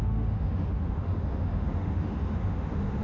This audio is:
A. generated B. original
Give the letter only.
A